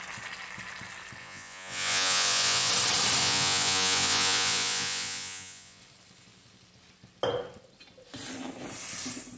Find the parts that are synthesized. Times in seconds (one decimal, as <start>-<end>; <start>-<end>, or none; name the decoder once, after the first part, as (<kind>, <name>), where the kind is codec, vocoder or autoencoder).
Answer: 1.2-2.7 (vocoder, Vocos); 3.2-5.8